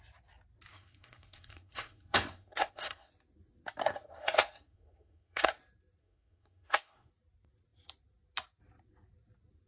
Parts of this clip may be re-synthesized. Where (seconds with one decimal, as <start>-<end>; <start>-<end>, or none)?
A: 0.7-3.1; 3.8-5.5; 6.0-7.1